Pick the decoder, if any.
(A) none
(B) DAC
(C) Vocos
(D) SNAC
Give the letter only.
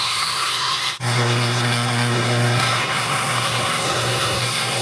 D